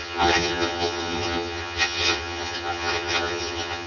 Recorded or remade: remade